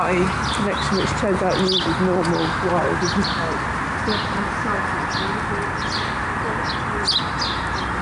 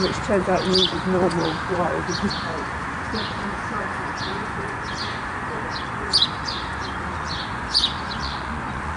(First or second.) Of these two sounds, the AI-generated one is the second